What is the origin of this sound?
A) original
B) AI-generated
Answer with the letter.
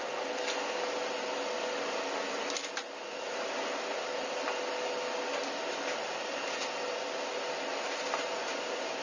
A